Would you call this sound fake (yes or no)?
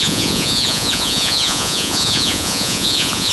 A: yes